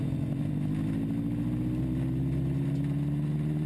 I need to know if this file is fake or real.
real